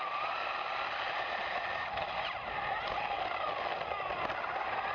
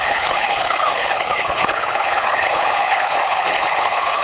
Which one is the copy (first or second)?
second